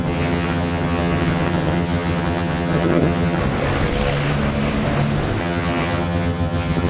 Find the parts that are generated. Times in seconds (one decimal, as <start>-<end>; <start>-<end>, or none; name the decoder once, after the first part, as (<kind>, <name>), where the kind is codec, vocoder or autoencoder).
0.0-3.4 (vocoder, HiFi-GAN); 5.4-6.9